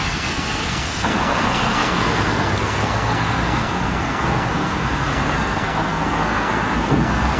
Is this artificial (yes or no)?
yes